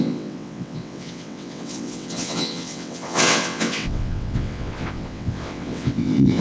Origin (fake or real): fake